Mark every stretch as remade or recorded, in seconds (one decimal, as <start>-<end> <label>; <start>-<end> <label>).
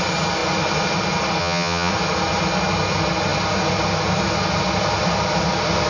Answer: 0.0-1.4 recorded; 1.4-1.9 remade; 1.9-5.9 recorded